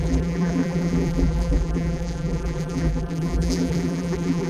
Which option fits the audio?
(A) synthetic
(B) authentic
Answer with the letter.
A